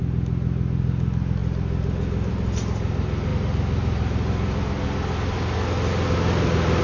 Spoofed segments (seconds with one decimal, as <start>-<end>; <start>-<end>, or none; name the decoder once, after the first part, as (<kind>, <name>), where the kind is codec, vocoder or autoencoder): none